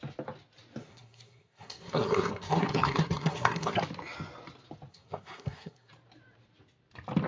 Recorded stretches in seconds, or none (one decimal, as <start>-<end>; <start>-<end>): 0.0-0.8; 3.8-4.9; 5.9-7.3